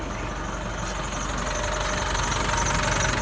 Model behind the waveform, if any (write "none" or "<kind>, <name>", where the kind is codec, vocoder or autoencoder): none